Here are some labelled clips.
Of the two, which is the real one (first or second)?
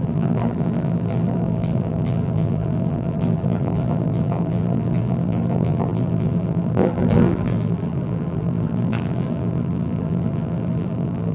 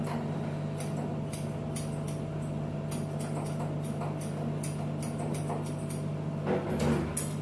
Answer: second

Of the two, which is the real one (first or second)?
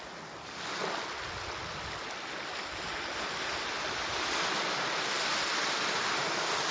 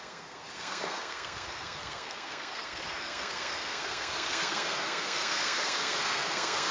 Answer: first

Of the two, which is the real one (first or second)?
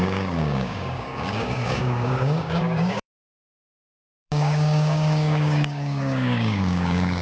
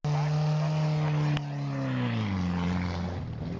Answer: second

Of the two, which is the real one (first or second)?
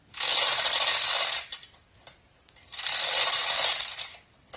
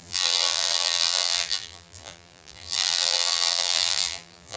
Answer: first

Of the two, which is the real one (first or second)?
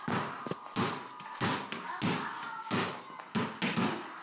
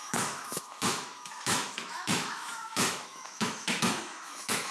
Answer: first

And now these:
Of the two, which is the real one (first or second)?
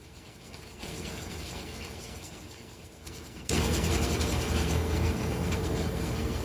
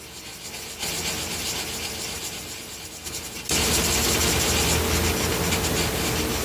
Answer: second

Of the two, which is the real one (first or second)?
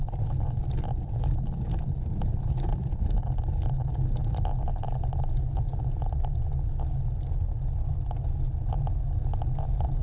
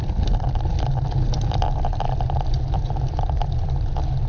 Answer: first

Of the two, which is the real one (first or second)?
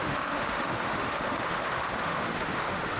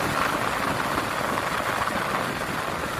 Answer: second